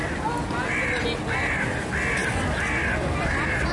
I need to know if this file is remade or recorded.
recorded